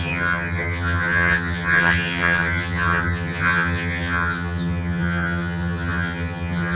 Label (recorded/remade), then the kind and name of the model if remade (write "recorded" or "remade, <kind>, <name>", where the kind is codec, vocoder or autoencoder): remade, vocoder, HiFi-GAN